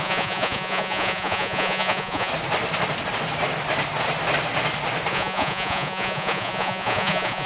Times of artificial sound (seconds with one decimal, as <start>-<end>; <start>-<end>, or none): 0.0-2.3; 5.1-7.5